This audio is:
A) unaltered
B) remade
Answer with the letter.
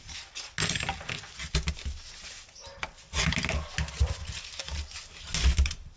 A